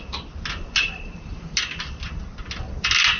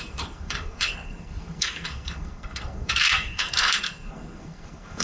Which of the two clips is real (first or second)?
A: first